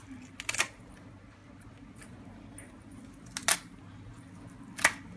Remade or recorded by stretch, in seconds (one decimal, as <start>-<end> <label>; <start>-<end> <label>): 0.0-5.2 recorded